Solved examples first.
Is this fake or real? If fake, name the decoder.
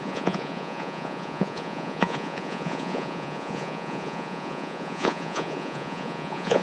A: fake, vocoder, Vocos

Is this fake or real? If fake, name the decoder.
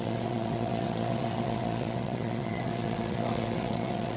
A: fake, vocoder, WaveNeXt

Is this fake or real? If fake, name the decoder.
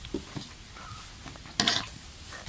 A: real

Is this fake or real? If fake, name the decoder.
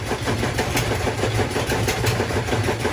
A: real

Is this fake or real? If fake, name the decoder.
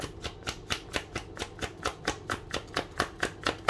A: real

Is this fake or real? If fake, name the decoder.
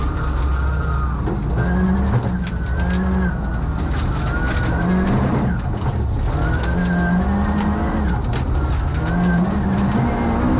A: real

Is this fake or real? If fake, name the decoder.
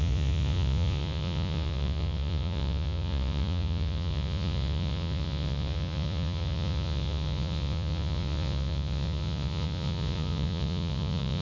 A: fake, vocoder, Vocos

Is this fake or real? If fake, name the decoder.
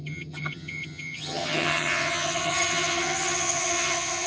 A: fake, vocoder, HiFi-GAN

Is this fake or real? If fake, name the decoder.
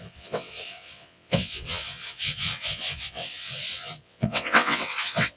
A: fake, vocoder, WaveNeXt